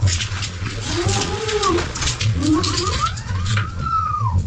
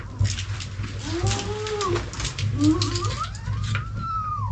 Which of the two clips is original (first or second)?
second